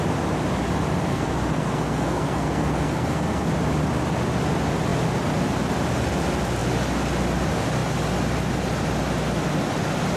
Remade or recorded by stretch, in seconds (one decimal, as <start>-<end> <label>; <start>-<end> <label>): 0.0-1.1 recorded; 1.1-3.5 remade; 3.5-10.2 recorded